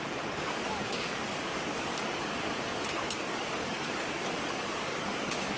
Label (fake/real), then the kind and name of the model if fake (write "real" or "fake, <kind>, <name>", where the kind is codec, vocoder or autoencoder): fake, codec, DAC